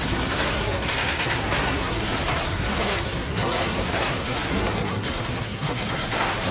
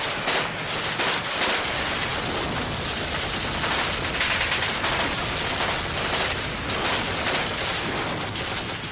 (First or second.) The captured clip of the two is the second